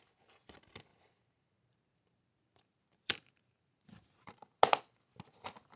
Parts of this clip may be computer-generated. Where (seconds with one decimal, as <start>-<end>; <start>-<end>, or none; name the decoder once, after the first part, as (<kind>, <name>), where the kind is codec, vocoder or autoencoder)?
0.9-4.4 (vocoder, BigVGAN v2)

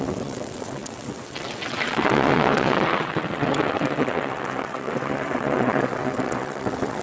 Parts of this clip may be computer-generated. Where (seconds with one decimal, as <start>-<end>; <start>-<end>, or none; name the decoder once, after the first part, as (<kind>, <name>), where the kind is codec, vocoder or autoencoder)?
0.0-7.0 (vocoder, WaveNeXt)

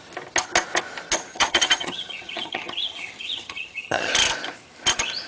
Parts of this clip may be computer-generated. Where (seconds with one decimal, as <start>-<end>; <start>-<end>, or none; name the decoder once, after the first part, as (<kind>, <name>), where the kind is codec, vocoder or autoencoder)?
1.3-4.1 (vocoder, HiFi-GAN)

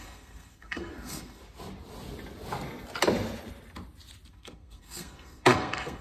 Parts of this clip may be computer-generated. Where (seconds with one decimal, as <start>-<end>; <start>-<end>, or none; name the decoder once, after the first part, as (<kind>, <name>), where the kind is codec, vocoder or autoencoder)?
0.0-1.4 (codec, SNAC); 4.3-6.0

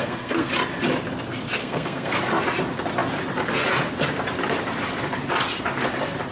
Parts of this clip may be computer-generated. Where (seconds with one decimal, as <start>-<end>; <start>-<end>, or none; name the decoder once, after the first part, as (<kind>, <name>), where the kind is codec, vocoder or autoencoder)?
0.0-0.5 (codec, SNAC); 1.6-2.2

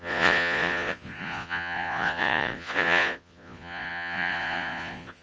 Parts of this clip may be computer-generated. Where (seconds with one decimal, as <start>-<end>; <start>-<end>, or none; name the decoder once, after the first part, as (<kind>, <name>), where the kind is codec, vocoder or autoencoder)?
0.0-5.2 (vocoder, Vocos)

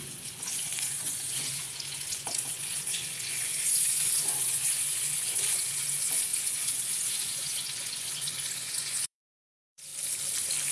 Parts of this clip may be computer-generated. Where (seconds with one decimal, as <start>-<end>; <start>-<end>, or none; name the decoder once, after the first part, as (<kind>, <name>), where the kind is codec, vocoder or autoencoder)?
0.0-9.9 (vocoder, Vocos)